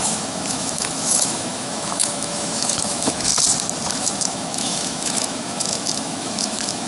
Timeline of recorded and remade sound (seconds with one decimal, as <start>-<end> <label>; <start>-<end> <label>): 0.0-3.3 remade; 3.3-4.0 recorded; 4.0-6.9 remade